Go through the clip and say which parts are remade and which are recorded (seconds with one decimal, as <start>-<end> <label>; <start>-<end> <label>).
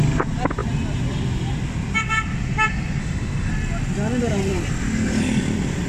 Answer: 0.0-3.0 recorded; 3.0-3.5 remade; 3.5-5.9 recorded